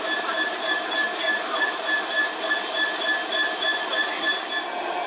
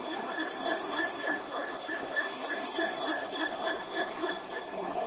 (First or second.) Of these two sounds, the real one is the first